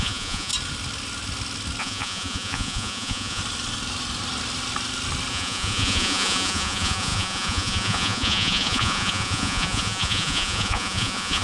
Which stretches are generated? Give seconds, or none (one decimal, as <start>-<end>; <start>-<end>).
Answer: 0.0-0.5; 1.8-3.4; 5.3-11.4